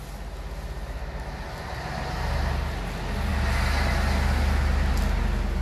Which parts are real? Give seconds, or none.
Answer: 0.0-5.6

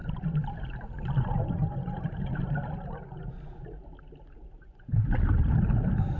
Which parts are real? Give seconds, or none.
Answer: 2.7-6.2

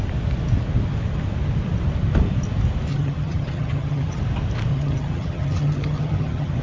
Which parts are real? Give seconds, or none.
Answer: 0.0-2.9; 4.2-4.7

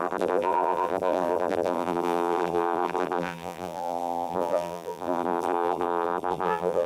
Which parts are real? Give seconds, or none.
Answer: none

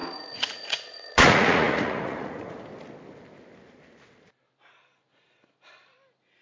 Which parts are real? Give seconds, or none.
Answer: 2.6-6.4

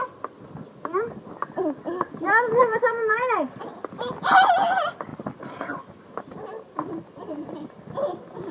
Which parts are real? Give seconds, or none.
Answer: 0.0-2.6; 3.5-8.5